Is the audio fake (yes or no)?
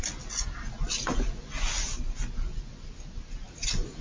no